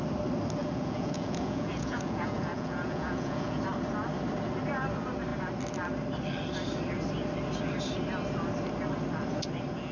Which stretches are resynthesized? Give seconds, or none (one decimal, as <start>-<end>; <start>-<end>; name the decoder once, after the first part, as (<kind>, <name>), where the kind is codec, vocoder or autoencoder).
0.6-3.6 (vocoder, Vocos)